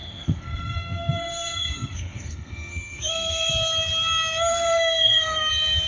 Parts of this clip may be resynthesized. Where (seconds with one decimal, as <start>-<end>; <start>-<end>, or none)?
0.0-3.5; 4.5-5.5